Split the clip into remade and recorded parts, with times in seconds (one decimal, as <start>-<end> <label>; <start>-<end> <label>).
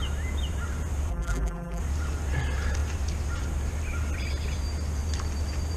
0.0-1.1 recorded; 1.1-1.8 remade; 1.8-5.8 recorded